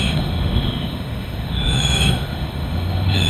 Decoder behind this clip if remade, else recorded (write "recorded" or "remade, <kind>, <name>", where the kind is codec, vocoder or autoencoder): remade, autoencoder, DAC-VAE